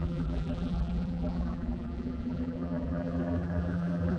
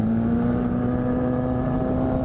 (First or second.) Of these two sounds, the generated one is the first